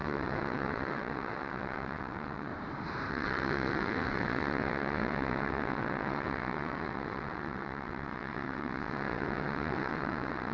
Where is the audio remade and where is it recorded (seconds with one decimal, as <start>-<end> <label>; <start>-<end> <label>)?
0.0-2.5 remade; 2.5-3.1 recorded; 3.1-10.5 remade